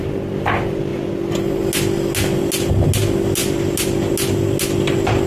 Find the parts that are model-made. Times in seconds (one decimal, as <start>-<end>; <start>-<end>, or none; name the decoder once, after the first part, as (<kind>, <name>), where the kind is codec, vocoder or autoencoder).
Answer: none